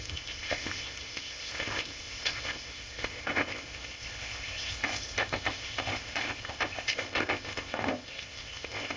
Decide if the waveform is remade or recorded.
remade